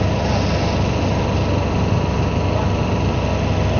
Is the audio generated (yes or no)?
no